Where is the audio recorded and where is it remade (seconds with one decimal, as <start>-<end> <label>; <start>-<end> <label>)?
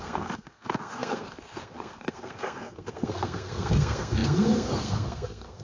0.0-5.6 remade